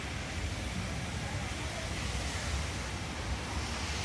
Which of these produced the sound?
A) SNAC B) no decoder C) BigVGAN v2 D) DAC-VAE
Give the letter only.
B